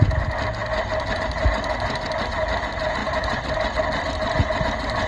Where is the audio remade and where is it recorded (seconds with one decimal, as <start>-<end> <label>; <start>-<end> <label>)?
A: 0.0-5.1 recorded